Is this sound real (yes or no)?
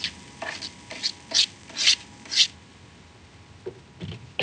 yes